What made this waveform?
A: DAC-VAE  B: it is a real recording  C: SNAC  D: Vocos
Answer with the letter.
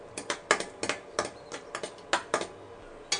B